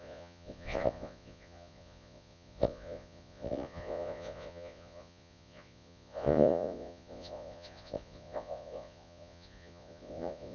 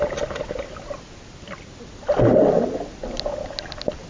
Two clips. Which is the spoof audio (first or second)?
first